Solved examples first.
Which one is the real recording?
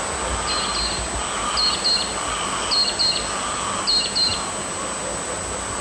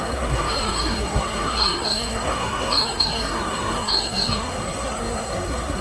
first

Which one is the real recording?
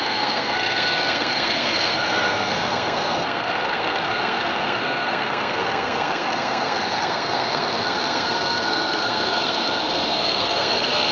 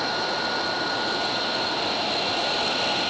second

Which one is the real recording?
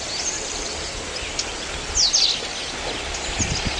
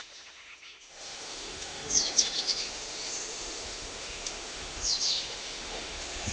first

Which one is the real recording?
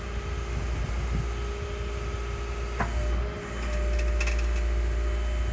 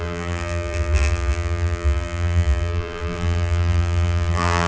first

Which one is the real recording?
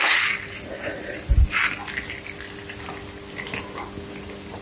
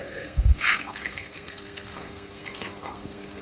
first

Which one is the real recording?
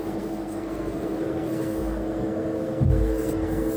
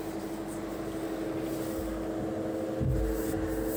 second